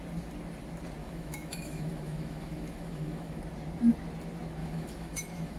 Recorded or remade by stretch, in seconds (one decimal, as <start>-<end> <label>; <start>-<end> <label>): 0.0-1.0 recorded; 1.0-3.4 remade; 3.4-4.6 recorded; 4.6-5.6 remade